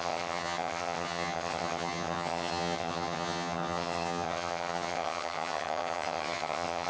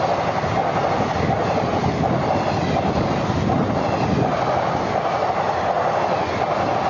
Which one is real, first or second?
second